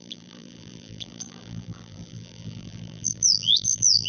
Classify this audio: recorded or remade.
remade